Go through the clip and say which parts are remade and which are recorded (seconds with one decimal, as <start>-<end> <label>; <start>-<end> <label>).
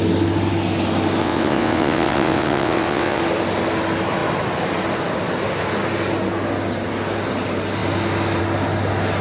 0.0-1.2 recorded; 1.2-3.2 remade; 3.2-9.2 recorded